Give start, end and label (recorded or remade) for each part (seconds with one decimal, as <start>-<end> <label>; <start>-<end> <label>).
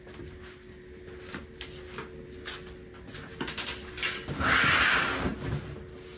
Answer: 0.0-6.2 recorded